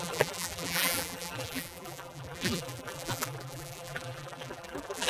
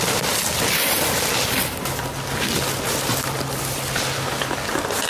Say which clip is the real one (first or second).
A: second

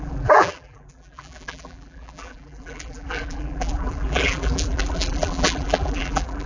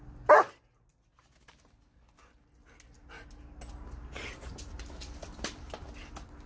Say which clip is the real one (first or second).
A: second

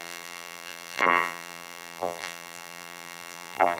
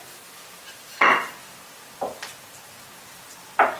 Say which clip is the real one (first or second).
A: second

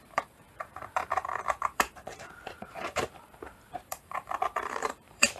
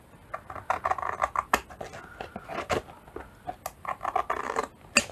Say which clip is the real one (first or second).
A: second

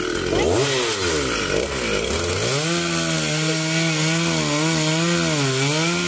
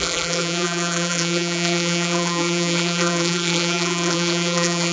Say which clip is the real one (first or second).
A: first